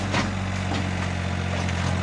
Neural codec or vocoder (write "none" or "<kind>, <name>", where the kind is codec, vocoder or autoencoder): none